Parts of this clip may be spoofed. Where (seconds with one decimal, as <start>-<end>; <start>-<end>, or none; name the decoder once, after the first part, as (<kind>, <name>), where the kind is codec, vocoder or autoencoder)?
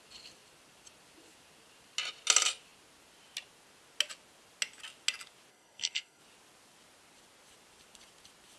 5.5-6.2 (codec, SNAC)